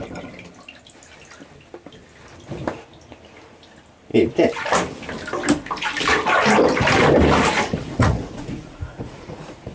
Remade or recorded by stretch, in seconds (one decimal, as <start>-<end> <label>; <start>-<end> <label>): 0.0-7.8 recorded; 7.8-9.7 remade